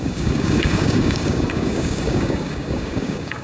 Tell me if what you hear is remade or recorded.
remade